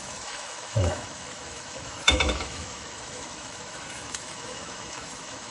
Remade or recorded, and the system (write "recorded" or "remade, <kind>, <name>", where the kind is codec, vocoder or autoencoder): remade, autoencoder, DAC-VAE